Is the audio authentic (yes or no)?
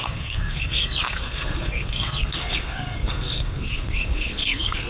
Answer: no